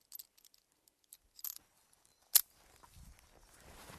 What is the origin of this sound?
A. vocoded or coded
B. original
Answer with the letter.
B